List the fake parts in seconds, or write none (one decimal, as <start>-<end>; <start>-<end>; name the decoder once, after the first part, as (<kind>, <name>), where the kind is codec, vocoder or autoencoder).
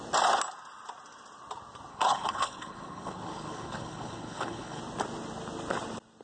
1.9-4.8 (codec, HILCodec)